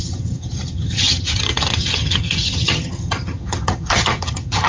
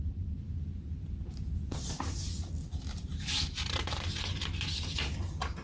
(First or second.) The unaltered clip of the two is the second